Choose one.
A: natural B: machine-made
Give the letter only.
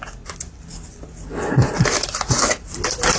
A